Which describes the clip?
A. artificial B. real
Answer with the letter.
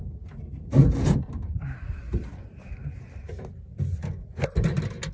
B